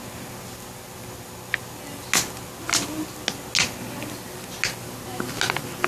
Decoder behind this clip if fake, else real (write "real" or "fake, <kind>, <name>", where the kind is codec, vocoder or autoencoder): real